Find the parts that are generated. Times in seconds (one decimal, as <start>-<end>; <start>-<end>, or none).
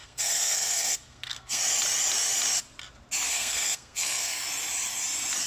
0.0-1.6; 3.3-4.4